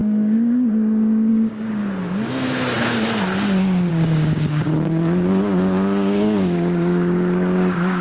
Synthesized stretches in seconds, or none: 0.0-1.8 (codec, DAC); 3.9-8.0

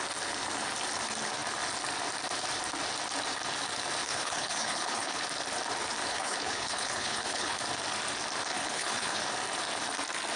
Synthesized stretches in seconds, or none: 4.0-5.2 (codec, HILCodec); 6.1-7.6; 8.5-9.2

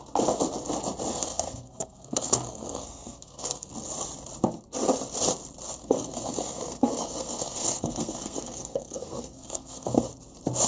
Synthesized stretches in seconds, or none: 1.1-3.7 (codec, SNAC); 5.8-10.1

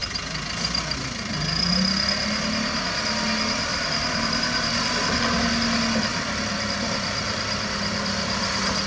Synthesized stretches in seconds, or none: 3.7-5.2 (vocoder, BigVGAN v2); 6.1-8.4